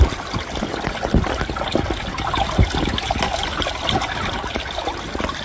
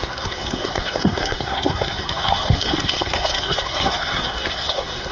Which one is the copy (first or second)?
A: second